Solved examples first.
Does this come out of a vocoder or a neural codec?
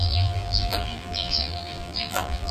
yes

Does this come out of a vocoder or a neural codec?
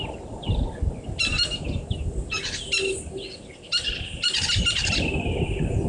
no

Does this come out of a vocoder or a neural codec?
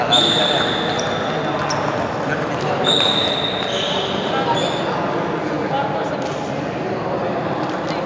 no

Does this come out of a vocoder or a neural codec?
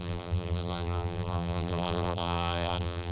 yes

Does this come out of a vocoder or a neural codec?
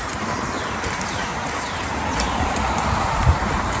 yes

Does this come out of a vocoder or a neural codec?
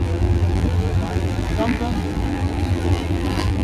yes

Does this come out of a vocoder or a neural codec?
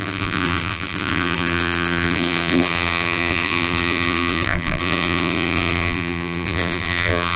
yes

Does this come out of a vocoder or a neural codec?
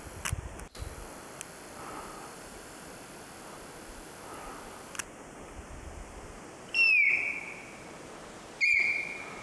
no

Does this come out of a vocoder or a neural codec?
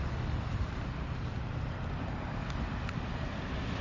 yes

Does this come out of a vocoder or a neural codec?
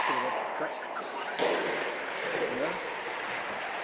no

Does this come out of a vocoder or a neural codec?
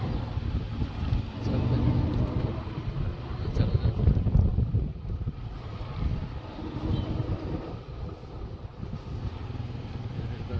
yes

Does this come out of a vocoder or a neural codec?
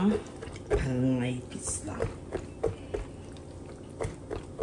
no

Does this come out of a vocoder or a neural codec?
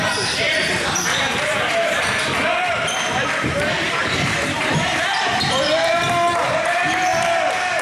yes